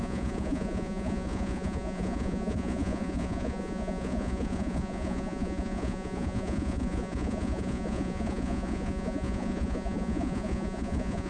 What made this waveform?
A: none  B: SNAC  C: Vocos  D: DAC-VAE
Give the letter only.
C